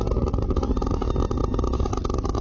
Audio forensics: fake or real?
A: real